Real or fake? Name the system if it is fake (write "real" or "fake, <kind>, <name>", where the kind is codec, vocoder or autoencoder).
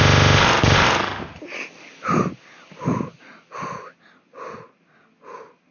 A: real